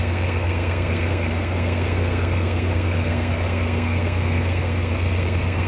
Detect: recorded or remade remade